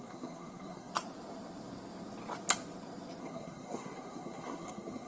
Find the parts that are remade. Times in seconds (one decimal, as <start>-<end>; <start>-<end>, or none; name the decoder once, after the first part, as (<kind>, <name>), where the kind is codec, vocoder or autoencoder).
0.0-0.9 (codec, SNAC); 3.2-5.1